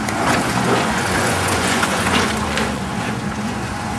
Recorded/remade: remade